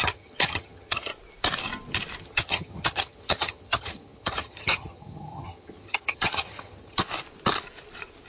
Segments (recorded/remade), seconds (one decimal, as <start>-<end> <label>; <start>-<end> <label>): 0.0-1.1 remade; 1.1-2.2 recorded; 2.2-7.0 remade; 7.0-8.3 recorded